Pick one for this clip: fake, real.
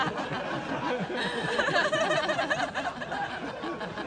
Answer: real